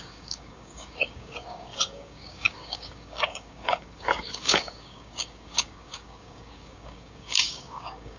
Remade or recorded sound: remade